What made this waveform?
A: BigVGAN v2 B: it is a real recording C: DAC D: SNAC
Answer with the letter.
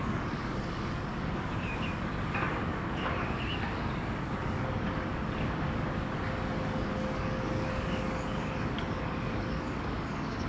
C